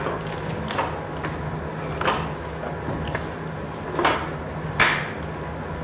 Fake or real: real